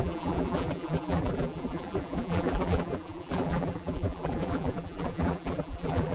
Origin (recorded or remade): remade